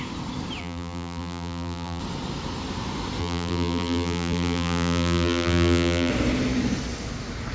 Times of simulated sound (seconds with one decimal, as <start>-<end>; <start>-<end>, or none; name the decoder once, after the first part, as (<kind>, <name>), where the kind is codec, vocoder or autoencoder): 0.6-2.0 (vocoder, BigVGAN v2); 3.2-6.1

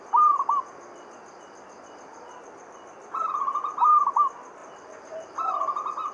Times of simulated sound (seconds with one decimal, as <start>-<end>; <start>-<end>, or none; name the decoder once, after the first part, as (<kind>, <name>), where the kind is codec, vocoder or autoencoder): 2.1-3.5 (vocoder, BigVGAN v2); 4.6-5.5

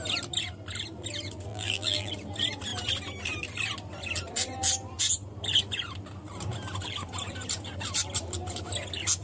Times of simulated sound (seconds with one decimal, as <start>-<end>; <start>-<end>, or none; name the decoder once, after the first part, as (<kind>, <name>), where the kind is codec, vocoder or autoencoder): 1.5-2.1 (vocoder, BigVGAN v2)

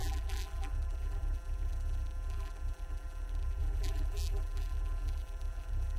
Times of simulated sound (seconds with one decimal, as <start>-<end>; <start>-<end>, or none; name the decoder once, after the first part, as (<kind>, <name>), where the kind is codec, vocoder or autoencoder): 0.0-6.0 (vocoder, BigVGAN v2)

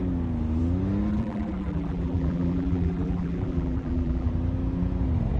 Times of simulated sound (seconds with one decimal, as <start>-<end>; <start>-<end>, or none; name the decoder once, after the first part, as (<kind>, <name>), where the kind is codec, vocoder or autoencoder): 1.1-4.3 (vocoder, BigVGAN v2)